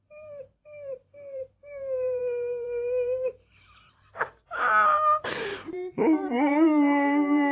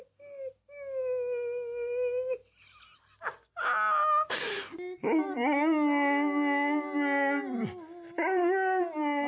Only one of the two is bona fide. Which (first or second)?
second